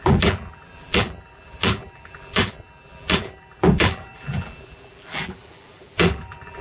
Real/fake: fake